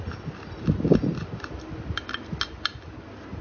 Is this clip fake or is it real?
real